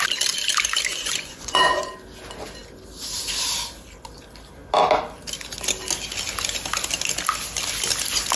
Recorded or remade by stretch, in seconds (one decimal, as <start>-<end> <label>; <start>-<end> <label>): 0.0-0.9 recorded; 0.9-1.9 remade; 1.9-8.4 recorded